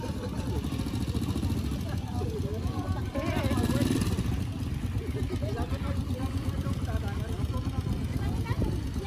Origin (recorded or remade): recorded